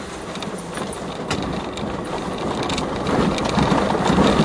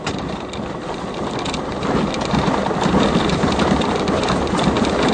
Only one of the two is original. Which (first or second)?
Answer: first